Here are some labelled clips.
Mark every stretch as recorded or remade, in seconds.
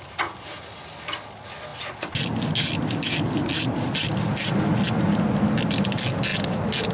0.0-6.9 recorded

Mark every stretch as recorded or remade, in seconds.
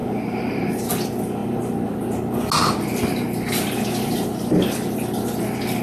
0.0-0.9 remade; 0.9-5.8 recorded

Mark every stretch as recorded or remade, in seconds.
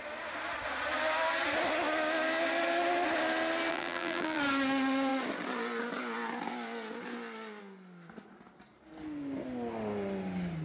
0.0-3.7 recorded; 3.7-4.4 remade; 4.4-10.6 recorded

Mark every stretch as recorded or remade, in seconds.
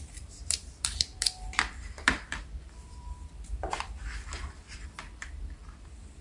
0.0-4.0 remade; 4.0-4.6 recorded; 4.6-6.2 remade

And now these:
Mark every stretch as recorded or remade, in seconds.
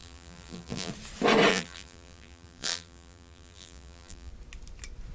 0.0-0.9 remade; 0.9-1.5 recorded; 1.5-4.3 remade; 4.3-5.1 recorded